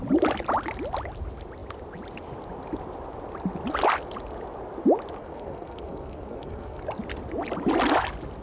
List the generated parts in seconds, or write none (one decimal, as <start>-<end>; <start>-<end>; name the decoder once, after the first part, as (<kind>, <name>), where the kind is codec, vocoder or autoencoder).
5.2-6.8 (codec, SNAC)